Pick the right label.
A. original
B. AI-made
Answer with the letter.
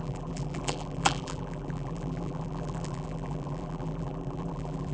B